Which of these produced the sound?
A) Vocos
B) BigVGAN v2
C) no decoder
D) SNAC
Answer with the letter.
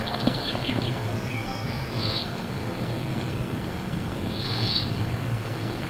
D